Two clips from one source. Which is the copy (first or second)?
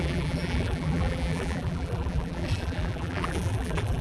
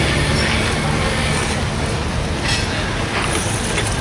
first